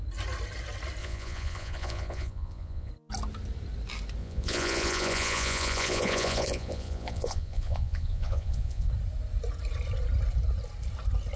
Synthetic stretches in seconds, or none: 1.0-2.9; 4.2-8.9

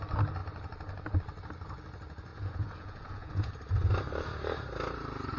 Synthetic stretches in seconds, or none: 2.3-3.5

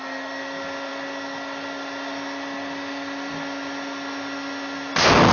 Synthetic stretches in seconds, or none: none

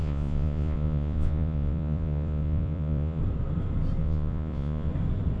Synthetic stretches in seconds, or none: 0.0-3.2; 4.0-4.9

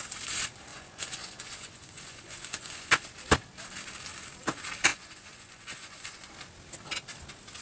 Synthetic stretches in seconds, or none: 0.7-2.9; 4.9-6.3